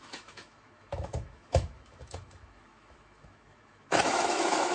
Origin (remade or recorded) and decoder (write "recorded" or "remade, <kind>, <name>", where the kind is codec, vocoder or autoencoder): remade, autoencoder, DAC-VAE